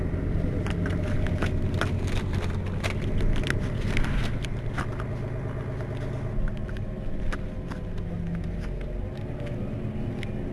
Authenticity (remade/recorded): recorded